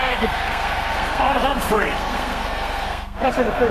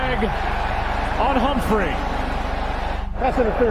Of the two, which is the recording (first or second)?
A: second